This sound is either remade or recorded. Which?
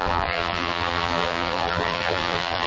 remade